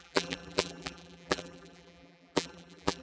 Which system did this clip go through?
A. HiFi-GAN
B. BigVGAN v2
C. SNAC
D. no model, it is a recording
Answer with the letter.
B